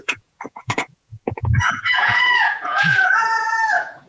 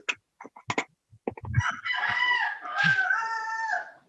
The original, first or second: second